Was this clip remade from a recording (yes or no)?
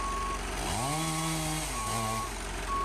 no